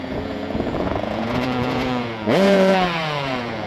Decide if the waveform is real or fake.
fake